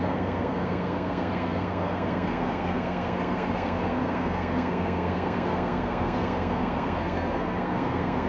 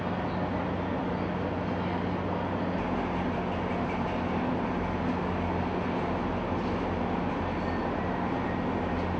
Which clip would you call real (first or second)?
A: second